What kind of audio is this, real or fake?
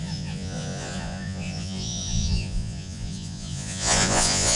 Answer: fake